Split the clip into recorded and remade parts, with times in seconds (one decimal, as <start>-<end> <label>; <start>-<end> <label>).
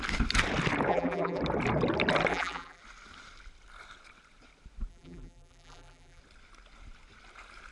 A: 0.0-0.9 recorded; 0.9-1.4 remade; 1.4-2.3 recorded; 2.3-2.8 remade; 2.8-4.9 recorded; 4.9-6.2 remade; 6.2-7.7 recorded